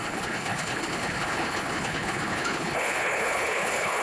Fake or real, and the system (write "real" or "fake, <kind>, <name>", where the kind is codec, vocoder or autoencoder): fake, codec, HILCodec